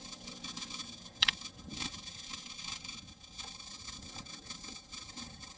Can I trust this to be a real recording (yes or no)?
no